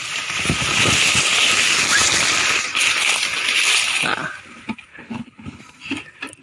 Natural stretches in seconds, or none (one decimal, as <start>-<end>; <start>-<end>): 0.0-4.9; 5.6-6.4